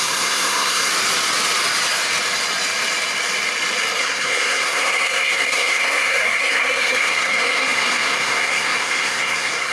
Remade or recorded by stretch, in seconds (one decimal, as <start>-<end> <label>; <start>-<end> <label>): 0.0-0.9 remade; 0.9-4.0 recorded; 4.0-9.7 remade